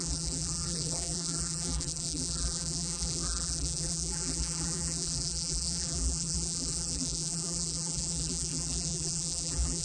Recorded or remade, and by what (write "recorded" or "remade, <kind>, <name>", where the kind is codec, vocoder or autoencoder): remade, vocoder, BigVGAN v2